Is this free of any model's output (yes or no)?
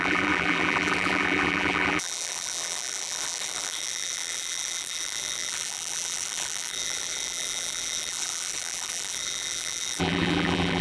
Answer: no